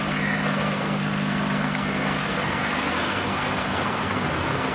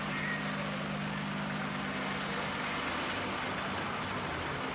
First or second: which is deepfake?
first